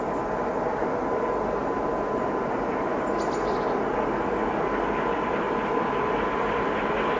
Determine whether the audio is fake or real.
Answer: real